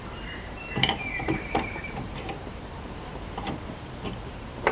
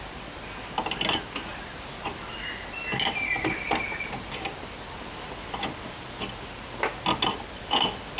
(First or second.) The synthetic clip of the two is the first